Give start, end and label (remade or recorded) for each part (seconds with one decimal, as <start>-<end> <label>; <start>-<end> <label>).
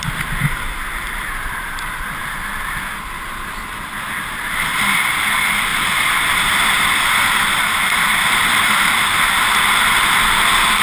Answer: 0.0-10.8 recorded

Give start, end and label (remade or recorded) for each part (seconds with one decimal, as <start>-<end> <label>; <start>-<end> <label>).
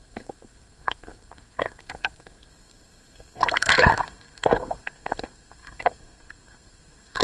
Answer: 0.0-7.2 remade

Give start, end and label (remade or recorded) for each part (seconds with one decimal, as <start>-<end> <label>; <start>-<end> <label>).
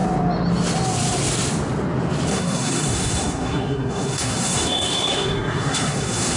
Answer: 0.0-2.3 recorded; 2.3-6.4 remade